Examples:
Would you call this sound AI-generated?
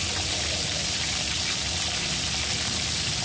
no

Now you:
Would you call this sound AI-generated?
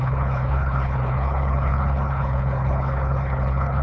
yes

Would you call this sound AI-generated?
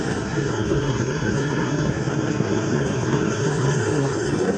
yes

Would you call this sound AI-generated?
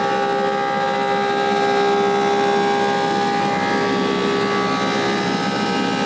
no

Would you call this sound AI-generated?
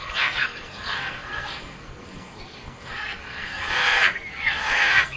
yes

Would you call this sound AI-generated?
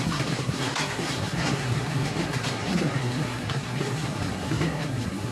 yes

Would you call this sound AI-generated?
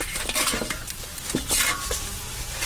no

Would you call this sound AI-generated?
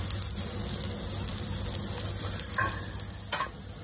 no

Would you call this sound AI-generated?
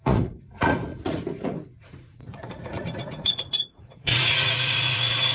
yes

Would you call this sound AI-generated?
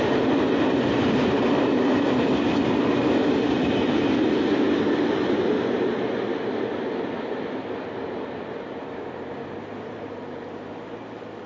no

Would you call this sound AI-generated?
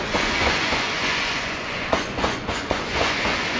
yes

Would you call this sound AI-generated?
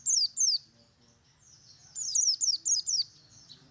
no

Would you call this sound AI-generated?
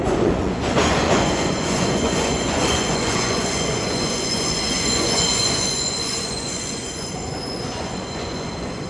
yes